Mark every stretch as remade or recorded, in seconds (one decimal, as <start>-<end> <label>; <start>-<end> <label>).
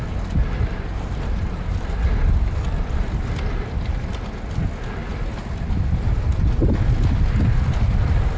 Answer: 0.0-0.4 recorded; 0.4-2.6 remade; 2.6-8.4 recorded